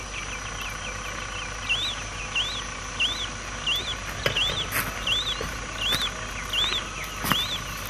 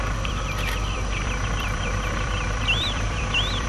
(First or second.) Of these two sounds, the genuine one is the first